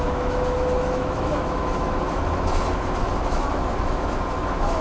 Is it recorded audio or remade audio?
remade